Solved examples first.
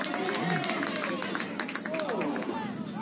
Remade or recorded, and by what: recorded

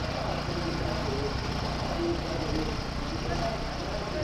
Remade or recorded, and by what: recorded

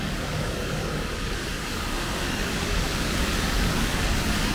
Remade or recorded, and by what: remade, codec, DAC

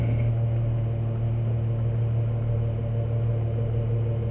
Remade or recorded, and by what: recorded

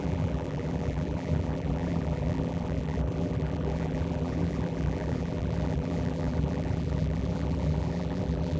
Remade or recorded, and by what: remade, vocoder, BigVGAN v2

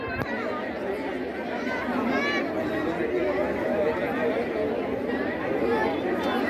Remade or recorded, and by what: recorded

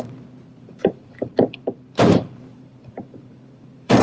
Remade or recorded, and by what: remade, vocoder, BigVGAN v2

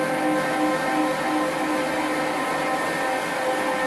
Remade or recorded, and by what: recorded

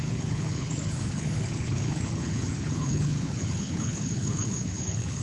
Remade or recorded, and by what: remade, codec, HILCodec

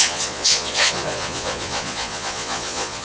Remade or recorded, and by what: remade, vocoder, Vocos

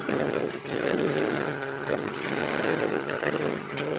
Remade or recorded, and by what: remade, vocoder, HiFi-GAN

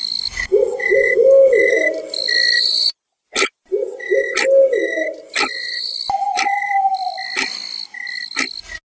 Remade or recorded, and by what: recorded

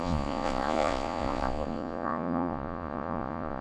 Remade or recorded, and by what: remade, vocoder, Vocos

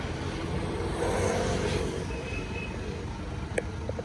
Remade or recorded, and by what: recorded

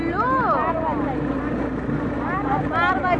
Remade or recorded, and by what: recorded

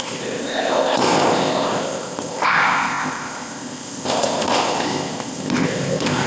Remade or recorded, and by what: remade, codec, ZipCodec